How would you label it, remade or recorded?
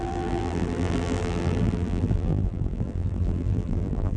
remade